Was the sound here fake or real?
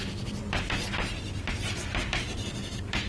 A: real